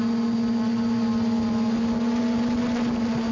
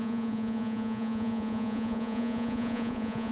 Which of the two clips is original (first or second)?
first